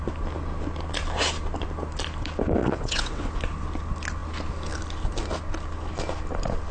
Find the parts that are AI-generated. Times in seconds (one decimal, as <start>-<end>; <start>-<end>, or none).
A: 2.6-3.3